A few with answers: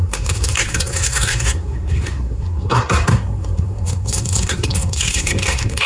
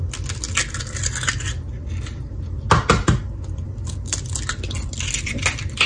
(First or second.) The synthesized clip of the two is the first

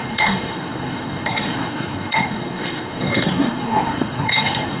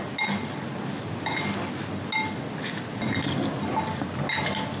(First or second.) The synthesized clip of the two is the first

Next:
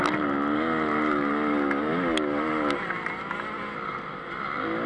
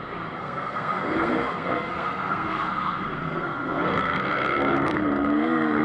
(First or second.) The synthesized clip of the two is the second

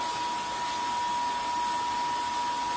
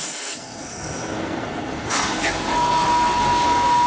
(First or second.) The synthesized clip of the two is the second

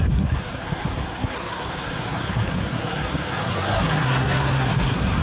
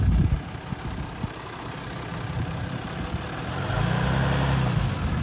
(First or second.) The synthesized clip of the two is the first